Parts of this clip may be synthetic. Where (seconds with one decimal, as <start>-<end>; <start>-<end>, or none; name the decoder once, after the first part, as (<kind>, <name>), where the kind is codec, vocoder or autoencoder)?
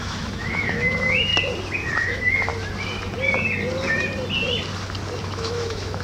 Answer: 0.0-1.3 (autoencoder, DAC-VAE); 1.9-2.5; 5.2-6.0